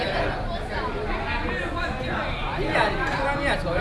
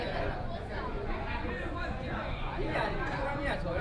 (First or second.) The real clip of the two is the first